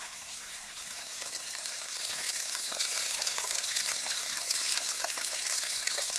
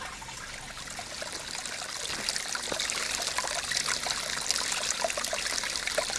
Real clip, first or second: second